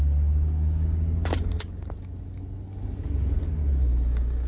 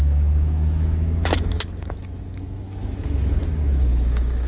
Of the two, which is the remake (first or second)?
second